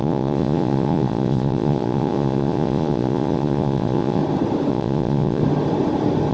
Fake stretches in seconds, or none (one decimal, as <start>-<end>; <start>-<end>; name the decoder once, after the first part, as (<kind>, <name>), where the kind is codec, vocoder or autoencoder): 0.0-4.2 (vocoder, Vocos); 4.7-5.4